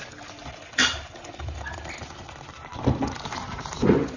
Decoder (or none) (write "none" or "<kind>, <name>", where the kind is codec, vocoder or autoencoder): none